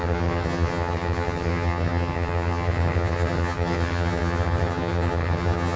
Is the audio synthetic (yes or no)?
yes